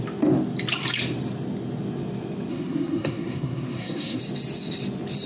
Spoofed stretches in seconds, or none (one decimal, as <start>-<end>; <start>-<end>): 2.5-4.2